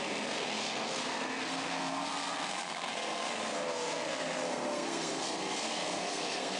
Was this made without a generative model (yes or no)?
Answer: no